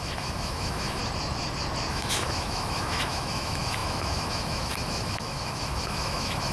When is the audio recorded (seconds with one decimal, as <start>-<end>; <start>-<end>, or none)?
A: 1.0-1.9